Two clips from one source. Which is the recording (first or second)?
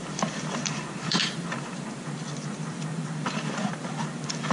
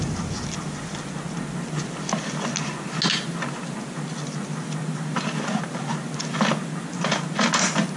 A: second